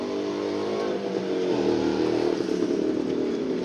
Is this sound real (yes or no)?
yes